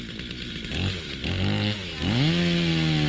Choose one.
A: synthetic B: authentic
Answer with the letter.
B